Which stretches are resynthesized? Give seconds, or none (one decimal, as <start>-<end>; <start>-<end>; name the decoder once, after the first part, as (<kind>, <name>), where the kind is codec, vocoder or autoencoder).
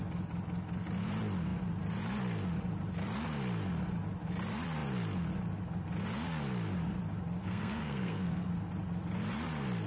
7.4-8.5 (codec, SNAC)